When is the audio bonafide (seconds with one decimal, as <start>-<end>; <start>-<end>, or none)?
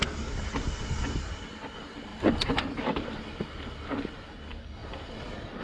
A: 0.0-5.6